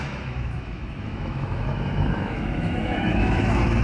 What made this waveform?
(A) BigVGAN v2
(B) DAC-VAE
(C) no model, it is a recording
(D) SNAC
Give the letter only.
B